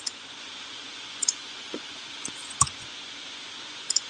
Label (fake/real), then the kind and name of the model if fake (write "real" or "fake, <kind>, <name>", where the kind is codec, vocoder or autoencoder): fake, vocoder, Vocos